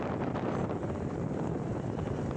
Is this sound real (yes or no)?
no